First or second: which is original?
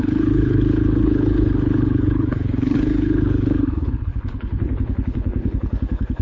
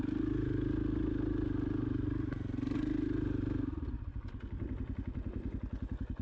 second